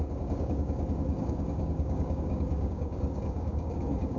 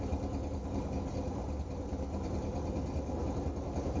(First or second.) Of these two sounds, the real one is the second